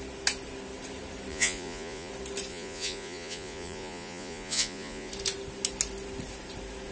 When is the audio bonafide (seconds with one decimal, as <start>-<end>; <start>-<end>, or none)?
0.0-1.3; 2.1-2.5; 5.1-6.9